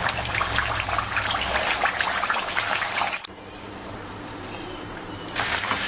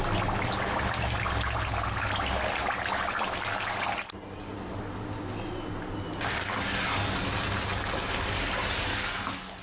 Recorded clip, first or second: second